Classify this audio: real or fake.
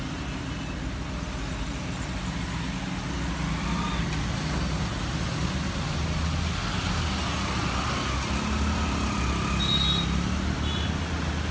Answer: real